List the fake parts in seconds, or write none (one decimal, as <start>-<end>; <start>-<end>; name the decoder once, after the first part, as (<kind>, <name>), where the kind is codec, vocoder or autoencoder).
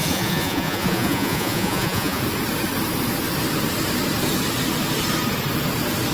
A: 0.0-2.2 (vocoder, Vocos)